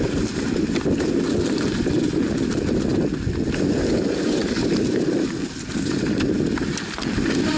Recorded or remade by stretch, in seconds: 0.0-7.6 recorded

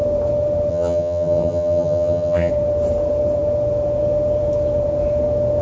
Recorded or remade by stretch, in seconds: 0.0-0.7 recorded; 0.7-2.5 remade; 2.5-5.6 recorded